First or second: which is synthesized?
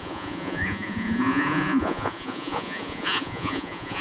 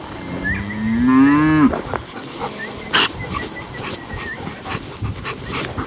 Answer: first